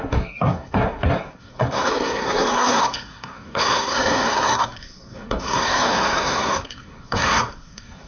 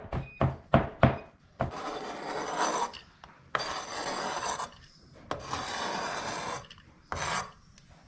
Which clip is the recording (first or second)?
second